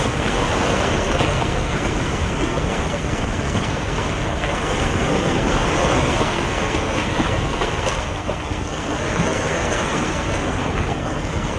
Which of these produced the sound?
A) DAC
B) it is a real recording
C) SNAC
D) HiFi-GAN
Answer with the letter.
C